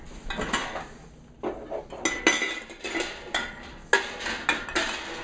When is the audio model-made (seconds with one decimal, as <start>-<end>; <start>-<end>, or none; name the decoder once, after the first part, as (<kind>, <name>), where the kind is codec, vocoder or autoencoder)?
none